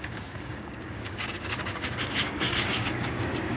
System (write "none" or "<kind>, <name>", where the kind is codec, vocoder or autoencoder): codec, DAC